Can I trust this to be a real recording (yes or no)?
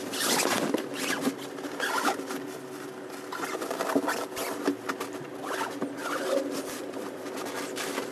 yes